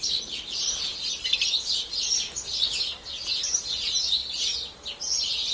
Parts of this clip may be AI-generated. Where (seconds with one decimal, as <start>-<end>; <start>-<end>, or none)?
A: none